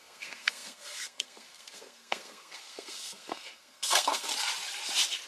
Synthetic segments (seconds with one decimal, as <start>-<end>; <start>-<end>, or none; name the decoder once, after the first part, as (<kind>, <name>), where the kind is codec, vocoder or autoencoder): 0.0-4.3 (codec, SNAC)